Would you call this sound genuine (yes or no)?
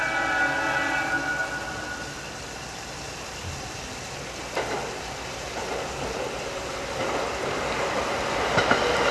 yes